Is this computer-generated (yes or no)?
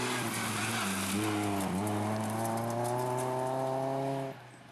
no